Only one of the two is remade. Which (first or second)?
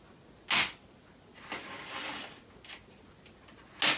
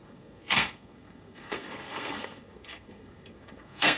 second